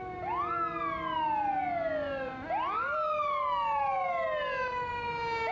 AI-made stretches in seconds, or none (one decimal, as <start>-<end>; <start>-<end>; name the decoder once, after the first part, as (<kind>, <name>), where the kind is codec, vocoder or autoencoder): none